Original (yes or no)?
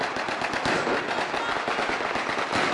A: yes